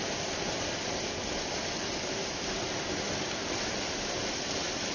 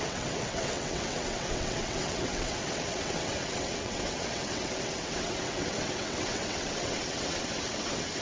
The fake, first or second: second